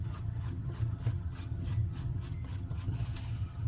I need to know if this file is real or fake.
fake